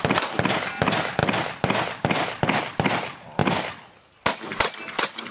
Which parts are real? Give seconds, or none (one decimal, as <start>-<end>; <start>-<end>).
0.0-5.3